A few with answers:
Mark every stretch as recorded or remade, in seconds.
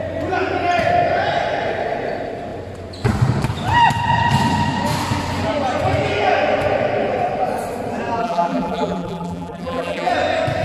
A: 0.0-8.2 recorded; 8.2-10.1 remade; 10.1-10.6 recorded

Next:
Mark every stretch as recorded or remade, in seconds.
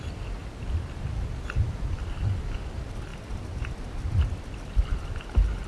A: 0.0-5.7 recorded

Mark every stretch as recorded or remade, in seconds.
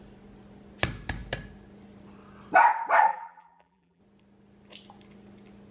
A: 0.0-3.1 recorded; 3.1-4.0 remade; 4.0-5.7 recorded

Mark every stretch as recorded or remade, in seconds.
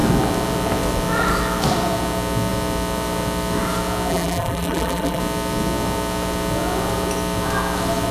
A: 0.0-4.1 recorded; 4.1-5.2 remade; 5.2-8.1 recorded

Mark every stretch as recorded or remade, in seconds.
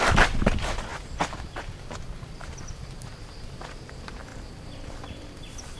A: 0.0-5.8 remade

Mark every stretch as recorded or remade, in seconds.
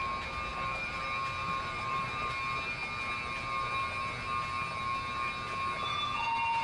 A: 0.0-0.5 recorded; 0.5-1.0 remade; 1.0-1.4 recorded; 1.4-2.3 remade; 2.3-6.6 recorded